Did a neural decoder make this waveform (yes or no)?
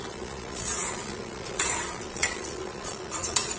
yes